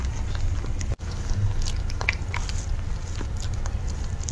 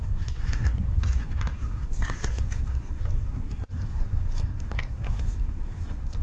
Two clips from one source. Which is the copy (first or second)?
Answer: second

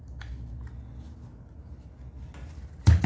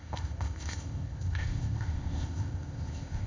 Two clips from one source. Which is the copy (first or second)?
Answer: second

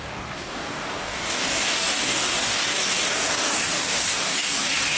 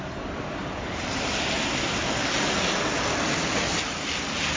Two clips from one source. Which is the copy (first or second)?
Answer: first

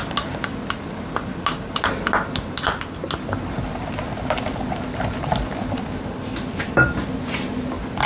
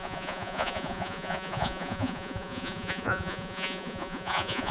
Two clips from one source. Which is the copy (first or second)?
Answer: second